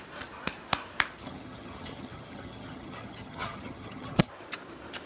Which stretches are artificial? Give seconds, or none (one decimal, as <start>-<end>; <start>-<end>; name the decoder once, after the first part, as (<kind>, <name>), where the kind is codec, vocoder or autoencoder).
1.2-4.3 (vocoder, HiFi-GAN)